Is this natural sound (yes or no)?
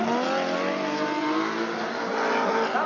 yes